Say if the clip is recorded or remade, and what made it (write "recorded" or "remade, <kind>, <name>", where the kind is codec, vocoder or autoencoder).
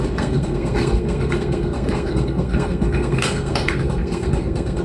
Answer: remade, codec, SNAC